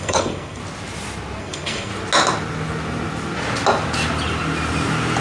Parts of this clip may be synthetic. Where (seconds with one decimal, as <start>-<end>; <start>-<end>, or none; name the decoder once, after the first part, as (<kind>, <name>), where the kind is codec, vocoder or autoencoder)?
0.0-0.6 (codec, SNAC); 1.4-1.9